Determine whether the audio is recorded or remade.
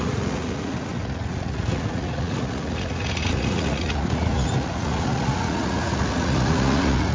remade